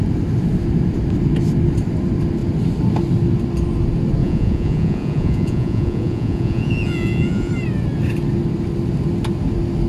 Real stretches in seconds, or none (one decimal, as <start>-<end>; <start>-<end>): 0.0-4.2; 7.5-9.9